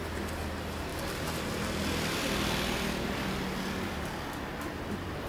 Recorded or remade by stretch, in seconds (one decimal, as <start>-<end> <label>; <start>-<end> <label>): 0.0-5.3 recorded